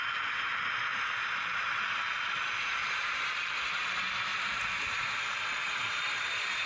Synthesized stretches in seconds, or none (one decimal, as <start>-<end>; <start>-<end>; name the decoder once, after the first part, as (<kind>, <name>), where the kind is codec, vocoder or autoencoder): 0.9-1.8 (vocoder, BigVGAN v2); 2.8-3.5; 4.3-6.7